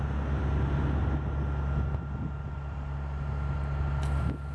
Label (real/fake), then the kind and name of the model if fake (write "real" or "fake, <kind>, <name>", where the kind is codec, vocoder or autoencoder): real